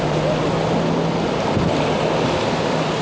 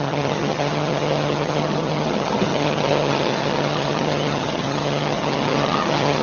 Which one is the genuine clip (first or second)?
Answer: first